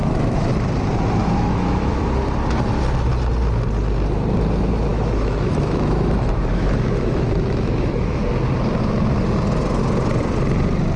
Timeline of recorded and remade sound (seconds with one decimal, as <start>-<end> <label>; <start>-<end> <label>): 0.0-0.5 remade; 0.5-1.2 recorded; 1.2-2.0 remade; 2.0-4.9 recorded; 4.9-8.2 remade; 8.2-11.0 recorded